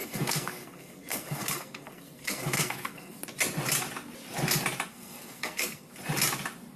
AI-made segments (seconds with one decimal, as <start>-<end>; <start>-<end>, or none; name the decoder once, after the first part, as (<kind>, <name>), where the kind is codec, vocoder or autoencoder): 0.0-3.2 (codec, SNAC); 4.9-5.9